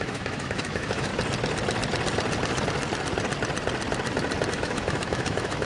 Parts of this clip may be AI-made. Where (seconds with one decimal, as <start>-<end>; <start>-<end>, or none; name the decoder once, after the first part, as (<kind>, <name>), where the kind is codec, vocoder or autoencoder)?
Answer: 0.0-1.1 (autoencoder, DAC-VAE); 4.5-5.7